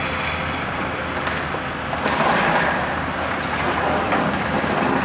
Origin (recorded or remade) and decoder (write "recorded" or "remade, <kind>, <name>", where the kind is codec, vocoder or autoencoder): recorded